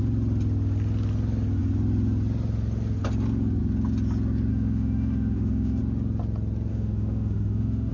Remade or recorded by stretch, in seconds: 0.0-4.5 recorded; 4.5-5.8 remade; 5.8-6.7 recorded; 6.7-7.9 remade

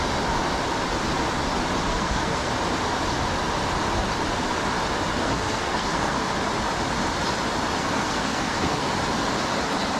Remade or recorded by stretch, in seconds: 0.0-1.9 recorded; 1.9-2.5 remade; 2.5-5.2 recorded; 5.2-6.3 remade; 6.3-7.8 recorded; 7.8-8.9 remade; 8.9-10.0 recorded

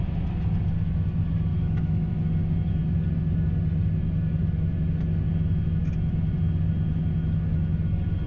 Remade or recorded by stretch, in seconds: 0.0-1.5 recorded; 1.5-2.1 remade; 2.1-8.3 recorded